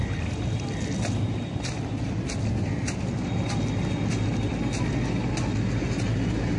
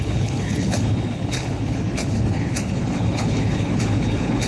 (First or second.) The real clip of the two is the first